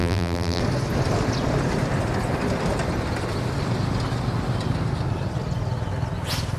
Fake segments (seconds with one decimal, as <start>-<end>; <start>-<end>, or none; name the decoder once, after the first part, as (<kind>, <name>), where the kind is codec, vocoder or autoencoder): 0.0-0.6 (vocoder, BigVGAN v2)